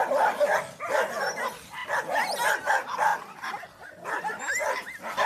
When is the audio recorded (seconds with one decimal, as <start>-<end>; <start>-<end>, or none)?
0.0-5.3